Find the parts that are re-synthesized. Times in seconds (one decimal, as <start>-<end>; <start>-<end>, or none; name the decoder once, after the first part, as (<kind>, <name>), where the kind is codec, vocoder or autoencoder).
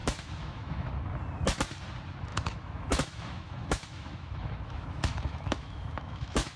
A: 0.0-0.9 (autoencoder, DAC-VAE); 2.3-6.6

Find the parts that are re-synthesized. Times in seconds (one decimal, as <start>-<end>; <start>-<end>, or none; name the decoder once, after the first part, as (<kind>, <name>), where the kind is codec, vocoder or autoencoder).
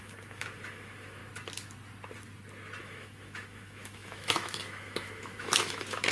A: 0.0-1.2 (autoencoder, DAC-VAE); 2.8-6.1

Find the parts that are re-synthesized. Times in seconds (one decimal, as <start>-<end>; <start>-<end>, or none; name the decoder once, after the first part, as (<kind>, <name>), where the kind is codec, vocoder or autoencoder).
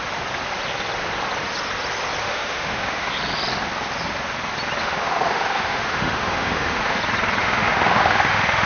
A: 2.2-3.1 (autoencoder, DAC-VAE); 4.8-7.0; 7.4-8.7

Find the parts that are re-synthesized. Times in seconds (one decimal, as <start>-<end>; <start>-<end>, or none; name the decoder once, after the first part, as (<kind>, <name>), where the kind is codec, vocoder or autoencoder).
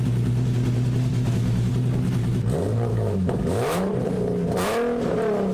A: 1.1-1.7 (autoencoder, DAC-VAE); 2.9-3.9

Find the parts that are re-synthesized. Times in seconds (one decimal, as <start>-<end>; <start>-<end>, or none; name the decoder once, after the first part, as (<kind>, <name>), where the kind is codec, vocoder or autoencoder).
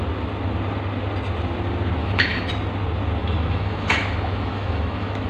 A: 2.0-2.5 (autoencoder, DAC-VAE); 3.2-5.3